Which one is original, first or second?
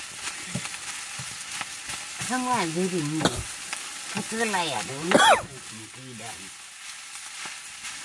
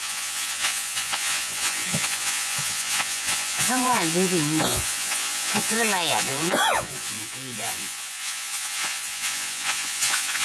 first